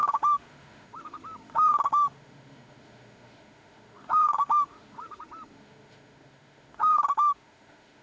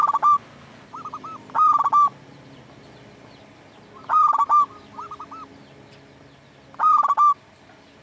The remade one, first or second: first